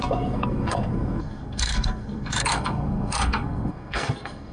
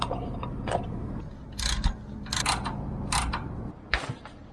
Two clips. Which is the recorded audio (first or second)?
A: second